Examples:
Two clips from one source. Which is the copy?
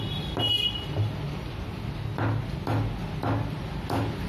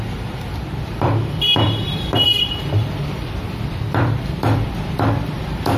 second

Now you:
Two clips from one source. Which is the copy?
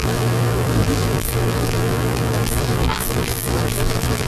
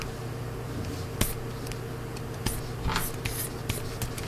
first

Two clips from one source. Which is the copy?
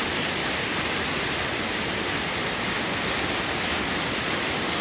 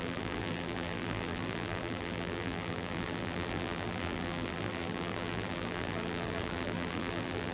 second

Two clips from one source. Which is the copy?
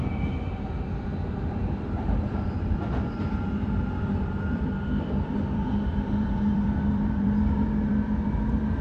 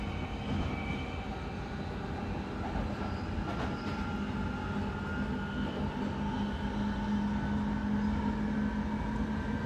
first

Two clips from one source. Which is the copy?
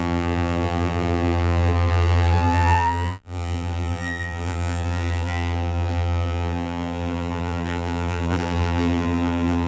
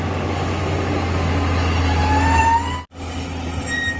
first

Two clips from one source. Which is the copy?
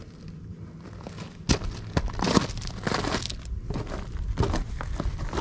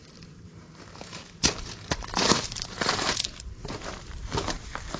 second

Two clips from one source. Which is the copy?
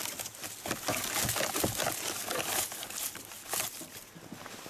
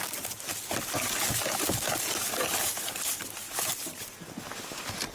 second